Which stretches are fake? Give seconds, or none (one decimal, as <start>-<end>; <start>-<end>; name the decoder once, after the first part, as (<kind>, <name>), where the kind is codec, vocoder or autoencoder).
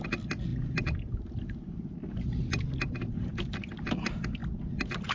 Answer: none